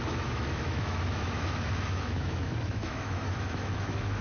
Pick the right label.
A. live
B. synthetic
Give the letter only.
B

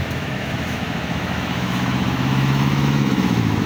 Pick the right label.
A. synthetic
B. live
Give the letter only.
A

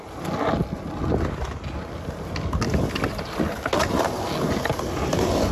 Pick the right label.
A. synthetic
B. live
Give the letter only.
B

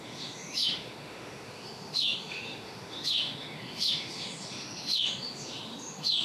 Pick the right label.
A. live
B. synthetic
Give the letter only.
B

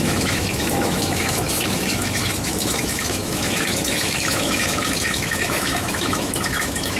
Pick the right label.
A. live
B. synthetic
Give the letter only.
B